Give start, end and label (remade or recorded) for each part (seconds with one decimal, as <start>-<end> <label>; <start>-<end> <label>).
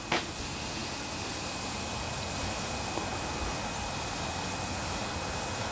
0.0-5.7 recorded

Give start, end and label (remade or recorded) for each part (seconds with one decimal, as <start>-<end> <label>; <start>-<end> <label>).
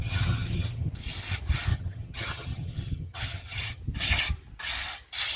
0.0-0.9 remade; 0.9-1.7 recorded; 1.7-3.8 remade; 3.8-5.4 recorded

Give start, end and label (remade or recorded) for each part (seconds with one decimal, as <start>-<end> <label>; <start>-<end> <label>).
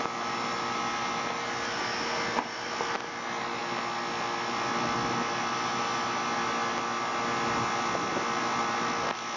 0.0-9.4 recorded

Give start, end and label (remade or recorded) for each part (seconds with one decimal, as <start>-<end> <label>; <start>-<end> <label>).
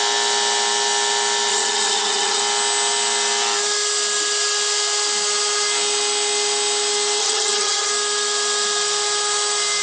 0.0-1.5 recorded; 1.5-2.4 remade; 2.4-7.2 recorded; 7.2-7.9 remade; 7.9-9.8 recorded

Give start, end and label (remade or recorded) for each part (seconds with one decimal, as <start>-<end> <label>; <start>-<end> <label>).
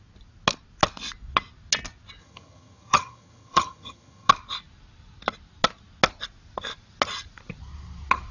0.0-2.2 recorded; 2.2-4.3 remade; 4.3-8.3 recorded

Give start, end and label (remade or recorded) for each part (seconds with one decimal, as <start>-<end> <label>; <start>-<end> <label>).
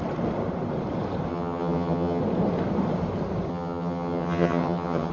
0.0-1.3 recorded; 1.3-2.2 remade; 2.2-3.5 recorded; 3.5-5.1 remade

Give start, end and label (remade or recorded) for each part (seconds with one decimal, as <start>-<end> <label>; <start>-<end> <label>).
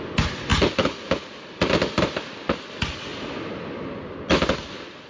0.0-5.1 recorded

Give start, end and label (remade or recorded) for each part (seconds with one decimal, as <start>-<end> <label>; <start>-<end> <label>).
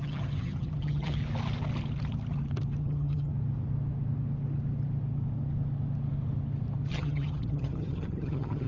0.0-1.2 remade; 1.2-2.8 recorded; 2.8-3.3 remade; 3.3-6.9 recorded; 6.9-8.7 remade